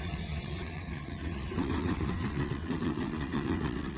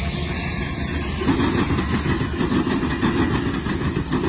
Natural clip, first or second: second